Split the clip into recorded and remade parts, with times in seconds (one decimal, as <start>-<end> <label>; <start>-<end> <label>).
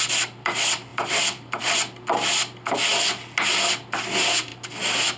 0.0-0.9 recorded; 0.9-1.6 remade; 1.6-5.2 recorded